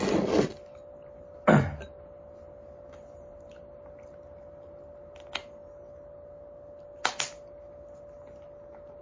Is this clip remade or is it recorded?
recorded